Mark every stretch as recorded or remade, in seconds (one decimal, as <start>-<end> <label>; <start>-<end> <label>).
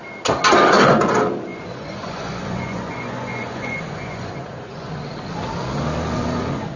0.0-1.5 recorded; 1.5-4.9 remade; 4.9-6.8 recorded